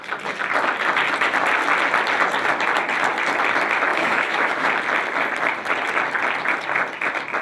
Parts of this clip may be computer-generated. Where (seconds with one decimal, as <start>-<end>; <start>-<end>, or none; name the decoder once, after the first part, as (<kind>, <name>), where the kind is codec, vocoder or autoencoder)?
3.9-4.7 (autoencoder, DAC-VAE)